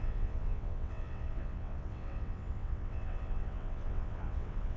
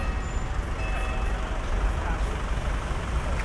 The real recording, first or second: second